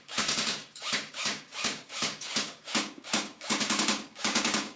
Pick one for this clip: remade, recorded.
remade